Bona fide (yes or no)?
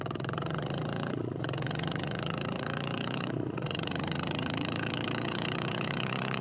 no